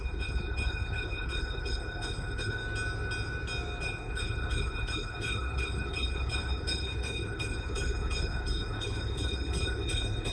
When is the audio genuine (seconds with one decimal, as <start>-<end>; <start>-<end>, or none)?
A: 2.6-3.8